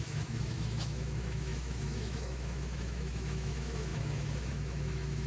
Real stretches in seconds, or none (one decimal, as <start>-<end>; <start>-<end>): none